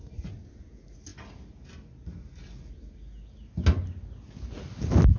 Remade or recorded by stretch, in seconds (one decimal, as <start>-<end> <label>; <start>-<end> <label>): 0.0-5.2 recorded